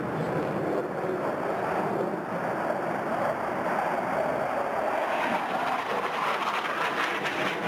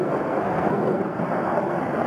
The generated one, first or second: second